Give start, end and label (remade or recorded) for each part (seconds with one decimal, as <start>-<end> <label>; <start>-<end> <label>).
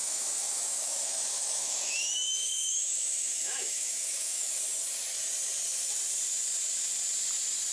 0.0-4.6 remade; 4.6-7.7 recorded